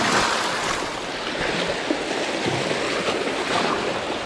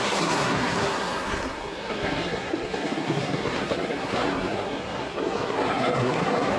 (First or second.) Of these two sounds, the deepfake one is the second